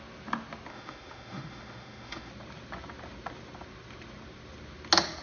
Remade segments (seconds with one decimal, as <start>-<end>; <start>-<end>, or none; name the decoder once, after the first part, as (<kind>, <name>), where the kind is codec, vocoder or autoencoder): 0.7-2.3 (autoencoder, DAC-VAE)